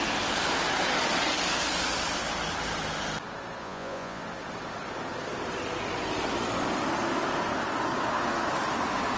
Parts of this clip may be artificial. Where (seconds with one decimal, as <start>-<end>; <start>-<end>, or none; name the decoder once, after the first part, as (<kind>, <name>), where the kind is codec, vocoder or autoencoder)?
3.6-4.2 (vocoder, Vocos)